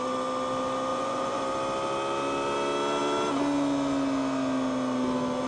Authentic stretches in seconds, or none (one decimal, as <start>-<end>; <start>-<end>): 0.0-0.9; 1.4-5.5